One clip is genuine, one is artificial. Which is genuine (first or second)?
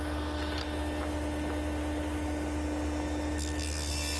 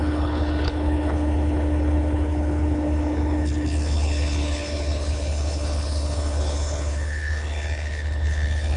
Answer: first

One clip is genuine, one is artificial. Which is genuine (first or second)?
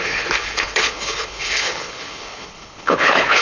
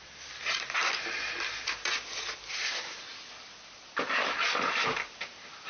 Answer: second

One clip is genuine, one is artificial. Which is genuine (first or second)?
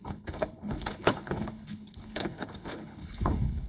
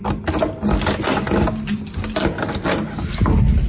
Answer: second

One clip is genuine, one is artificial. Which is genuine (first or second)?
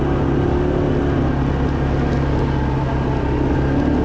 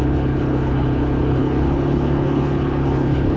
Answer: first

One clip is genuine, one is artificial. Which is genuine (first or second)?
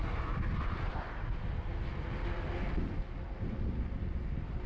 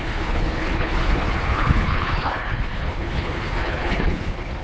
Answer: first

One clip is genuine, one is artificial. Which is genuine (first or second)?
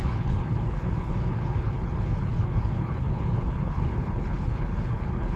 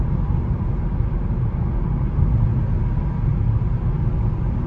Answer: second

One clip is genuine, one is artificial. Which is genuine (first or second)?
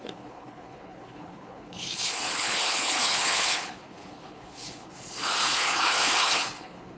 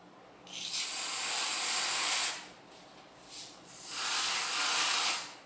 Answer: second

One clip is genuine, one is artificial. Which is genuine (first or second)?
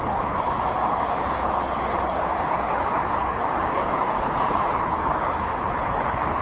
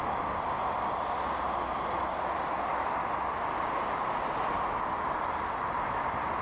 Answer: second